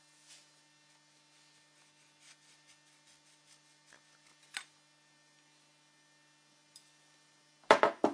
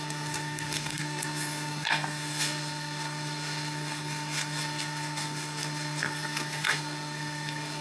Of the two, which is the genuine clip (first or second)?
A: first